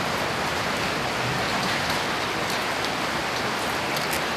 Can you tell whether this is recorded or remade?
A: recorded